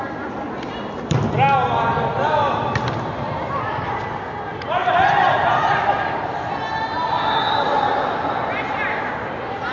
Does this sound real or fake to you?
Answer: real